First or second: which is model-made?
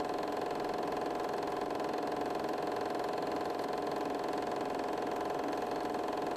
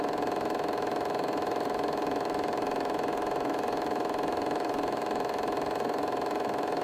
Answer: second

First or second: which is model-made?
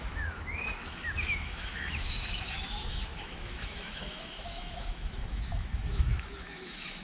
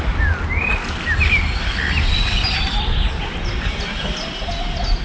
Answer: first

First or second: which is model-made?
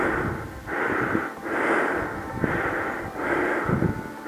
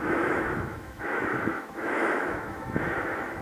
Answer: second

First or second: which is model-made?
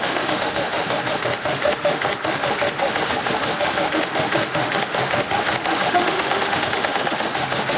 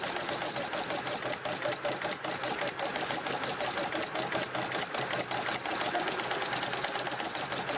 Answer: first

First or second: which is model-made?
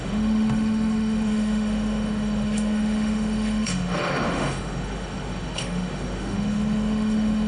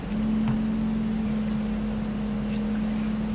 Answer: first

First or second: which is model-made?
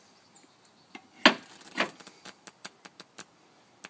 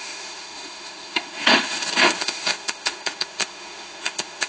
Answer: second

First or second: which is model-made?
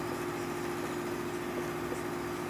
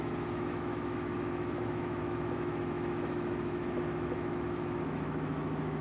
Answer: second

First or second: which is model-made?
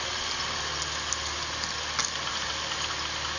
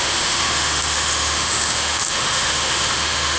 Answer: second